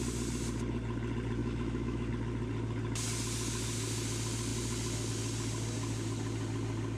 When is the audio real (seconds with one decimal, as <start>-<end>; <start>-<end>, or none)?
0.0-1.4; 2.1-7.0